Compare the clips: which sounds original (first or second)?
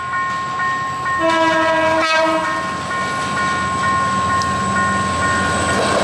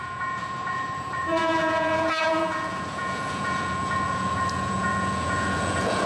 first